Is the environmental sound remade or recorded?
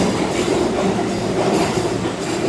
recorded